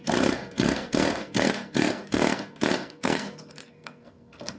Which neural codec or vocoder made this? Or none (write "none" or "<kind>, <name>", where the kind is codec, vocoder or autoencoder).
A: codec, SNAC